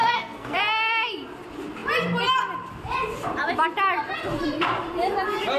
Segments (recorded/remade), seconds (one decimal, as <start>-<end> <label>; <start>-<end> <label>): 0.0-0.6 remade; 0.6-5.6 recorded